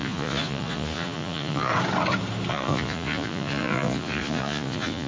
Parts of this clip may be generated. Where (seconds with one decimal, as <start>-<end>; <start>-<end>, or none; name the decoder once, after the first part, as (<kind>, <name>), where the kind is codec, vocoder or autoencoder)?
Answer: 0.0-1.7 (vocoder, Vocos); 2.5-5.1